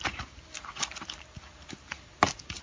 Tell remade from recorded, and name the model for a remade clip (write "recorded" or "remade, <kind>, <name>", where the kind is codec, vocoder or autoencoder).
recorded